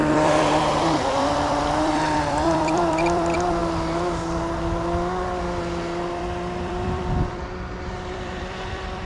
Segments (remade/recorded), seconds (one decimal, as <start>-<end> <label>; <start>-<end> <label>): 0.0-3.6 remade; 3.6-6.1 recorded; 6.1-9.0 remade

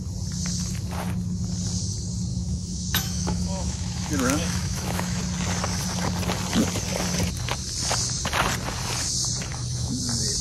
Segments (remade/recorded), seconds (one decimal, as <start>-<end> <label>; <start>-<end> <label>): 0.0-2.3 recorded; 2.3-5.2 remade; 5.2-9.5 recorded; 9.5-10.0 remade; 10.0-10.4 recorded